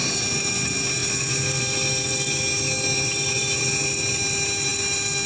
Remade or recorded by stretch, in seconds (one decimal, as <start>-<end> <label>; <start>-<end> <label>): 0.0-5.3 recorded